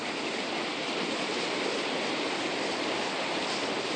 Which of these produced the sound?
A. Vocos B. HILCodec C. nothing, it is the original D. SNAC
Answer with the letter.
C